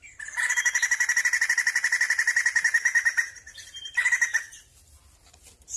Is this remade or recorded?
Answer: recorded